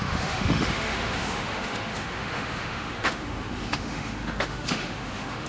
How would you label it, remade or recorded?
remade